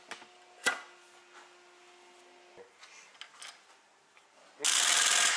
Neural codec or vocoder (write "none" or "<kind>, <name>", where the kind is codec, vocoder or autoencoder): none